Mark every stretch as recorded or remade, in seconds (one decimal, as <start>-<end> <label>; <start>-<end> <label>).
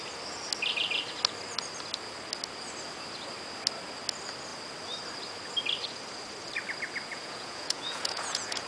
0.0-7.1 recorded; 7.1-8.7 remade